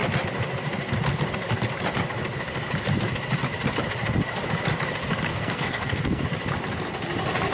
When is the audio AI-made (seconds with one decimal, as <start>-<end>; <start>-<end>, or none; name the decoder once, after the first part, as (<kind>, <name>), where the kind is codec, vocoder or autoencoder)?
5.3-6.2 (codec, SNAC)